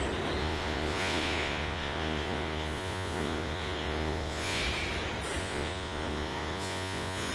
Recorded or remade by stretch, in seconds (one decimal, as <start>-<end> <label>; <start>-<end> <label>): 0.0-0.4 recorded; 0.4-4.6 remade; 4.6-5.4 recorded; 5.4-7.3 remade